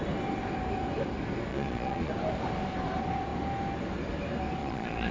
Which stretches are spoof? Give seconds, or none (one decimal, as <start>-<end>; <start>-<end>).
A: 1.5-2.1; 4.6-5.1